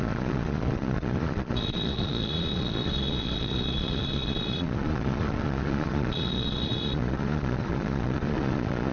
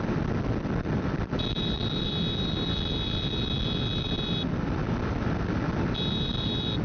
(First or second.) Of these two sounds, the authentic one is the second